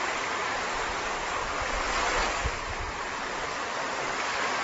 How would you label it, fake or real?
real